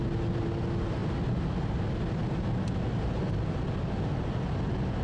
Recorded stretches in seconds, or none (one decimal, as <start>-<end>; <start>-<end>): 0.0-5.0